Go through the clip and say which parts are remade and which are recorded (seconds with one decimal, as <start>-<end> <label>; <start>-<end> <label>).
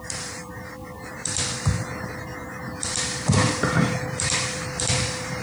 0.0-5.4 remade